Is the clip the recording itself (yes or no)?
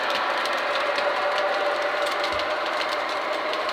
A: yes